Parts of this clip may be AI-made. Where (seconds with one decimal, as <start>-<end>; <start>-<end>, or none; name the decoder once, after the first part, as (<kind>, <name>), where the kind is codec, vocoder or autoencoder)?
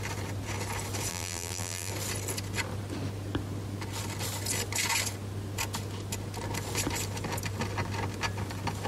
1.1-1.9 (vocoder, BigVGAN v2)